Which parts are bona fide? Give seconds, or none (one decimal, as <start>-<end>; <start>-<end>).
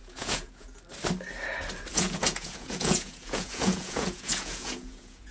0.8-1.9